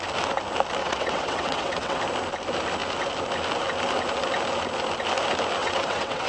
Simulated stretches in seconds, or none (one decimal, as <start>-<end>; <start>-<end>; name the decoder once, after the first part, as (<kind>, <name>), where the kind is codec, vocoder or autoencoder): 0.8-2.0 (vocoder, WaveNeXt); 5.6-6.3